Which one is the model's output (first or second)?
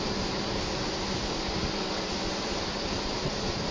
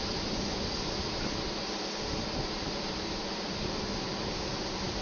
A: second